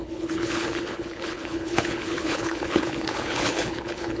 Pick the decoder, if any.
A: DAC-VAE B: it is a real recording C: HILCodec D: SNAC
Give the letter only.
C